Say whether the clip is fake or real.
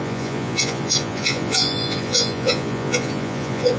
fake